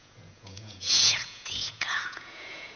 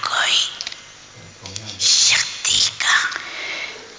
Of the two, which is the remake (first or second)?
first